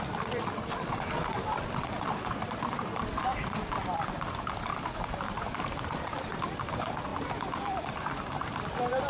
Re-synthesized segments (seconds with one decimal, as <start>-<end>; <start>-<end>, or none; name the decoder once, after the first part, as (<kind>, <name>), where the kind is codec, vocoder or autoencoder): 0.0-4.7 (vocoder, BigVGAN v2); 5.3-9.1